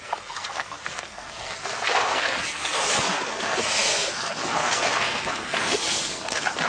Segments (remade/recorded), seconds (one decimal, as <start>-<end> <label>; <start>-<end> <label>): 0.0-6.7 remade

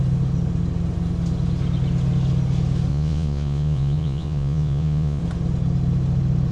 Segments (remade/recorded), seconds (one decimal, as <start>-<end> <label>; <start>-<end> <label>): 0.0-2.9 recorded; 2.9-5.2 remade; 5.2-6.5 recorded

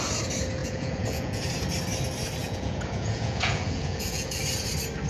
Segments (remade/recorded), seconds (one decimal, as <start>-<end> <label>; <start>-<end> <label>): 0.0-0.6 recorded; 0.6-1.4 remade; 1.4-2.4 recorded; 2.4-4.4 remade; 4.4-5.1 recorded

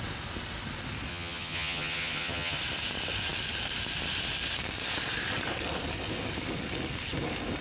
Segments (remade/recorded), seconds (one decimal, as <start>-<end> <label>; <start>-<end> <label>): 0.0-1.1 recorded; 1.1-2.6 remade; 2.6-7.6 recorded